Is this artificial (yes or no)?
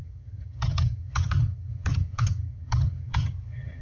yes